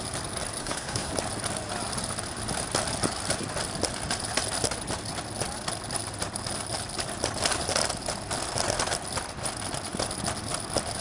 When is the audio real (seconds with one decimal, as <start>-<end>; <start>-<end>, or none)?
0.0-0.6; 1.1-11.0